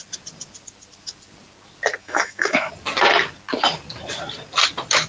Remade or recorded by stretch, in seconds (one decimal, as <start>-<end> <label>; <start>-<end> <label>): 0.0-2.0 recorded; 2.0-2.7 remade; 2.7-5.1 recorded